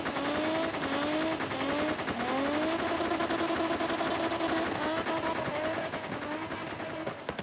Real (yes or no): yes